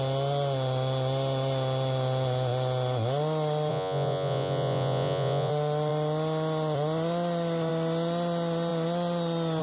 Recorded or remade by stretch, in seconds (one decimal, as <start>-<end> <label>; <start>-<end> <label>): 0.0-3.7 recorded; 3.7-5.5 remade; 5.5-9.6 recorded